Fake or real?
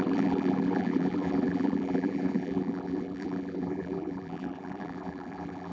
fake